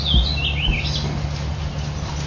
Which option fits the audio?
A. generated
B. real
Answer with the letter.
B